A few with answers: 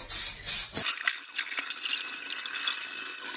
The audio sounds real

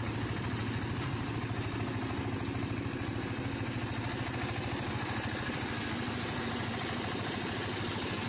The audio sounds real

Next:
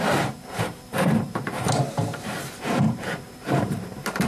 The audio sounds fake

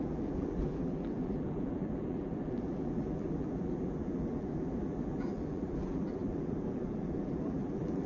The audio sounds fake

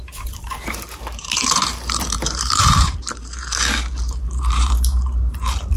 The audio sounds fake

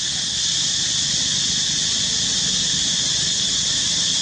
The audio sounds real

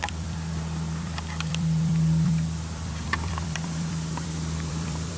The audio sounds fake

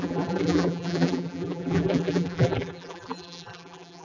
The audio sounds fake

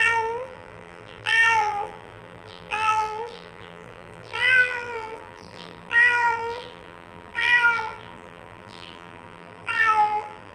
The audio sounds fake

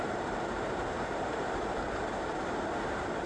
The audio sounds fake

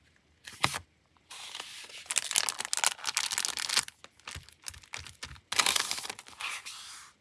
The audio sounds real